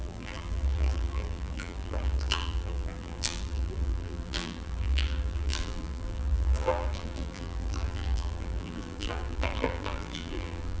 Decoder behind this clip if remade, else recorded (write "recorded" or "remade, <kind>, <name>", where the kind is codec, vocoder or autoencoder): remade, vocoder, BigVGAN v2